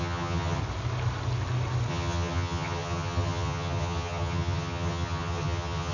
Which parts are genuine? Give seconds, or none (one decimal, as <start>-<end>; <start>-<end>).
0.6-1.9